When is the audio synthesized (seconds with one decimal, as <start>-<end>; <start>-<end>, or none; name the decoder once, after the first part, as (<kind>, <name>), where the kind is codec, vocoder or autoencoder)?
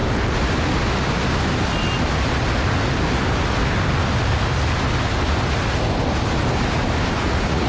7.2-7.7 (vocoder, Vocos)